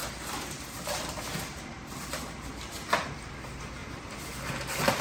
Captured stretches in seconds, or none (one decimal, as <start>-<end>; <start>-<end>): 1.2-1.7; 2.5-3.8